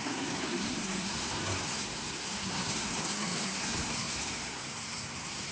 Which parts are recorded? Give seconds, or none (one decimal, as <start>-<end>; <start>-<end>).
none